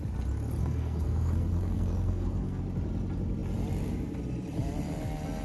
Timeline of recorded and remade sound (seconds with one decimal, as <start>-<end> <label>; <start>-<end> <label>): 0.0-0.6 recorded; 0.6-2.6 remade; 2.6-5.4 recorded